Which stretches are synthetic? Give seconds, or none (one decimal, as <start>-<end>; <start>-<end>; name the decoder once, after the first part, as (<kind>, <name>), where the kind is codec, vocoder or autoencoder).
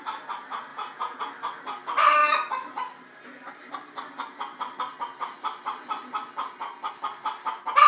0.7-1.2 (vocoder, Vocos)